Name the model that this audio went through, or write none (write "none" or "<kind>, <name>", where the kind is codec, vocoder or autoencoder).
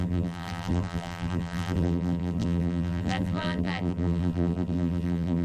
vocoder, BigVGAN v2